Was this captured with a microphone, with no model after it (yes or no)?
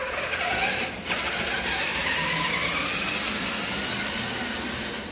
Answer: yes